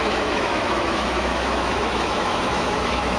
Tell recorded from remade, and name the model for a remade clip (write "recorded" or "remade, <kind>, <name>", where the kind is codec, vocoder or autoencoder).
remade, autoencoder, DAC-VAE